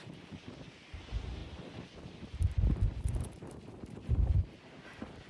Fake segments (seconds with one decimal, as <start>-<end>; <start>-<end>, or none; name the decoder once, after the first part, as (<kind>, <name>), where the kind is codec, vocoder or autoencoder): none

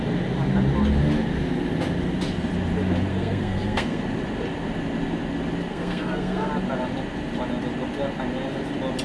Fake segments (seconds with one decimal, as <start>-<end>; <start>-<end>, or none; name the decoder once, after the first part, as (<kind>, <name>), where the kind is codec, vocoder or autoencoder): 3.1-4.0 (codec, SNAC); 5.7-6.5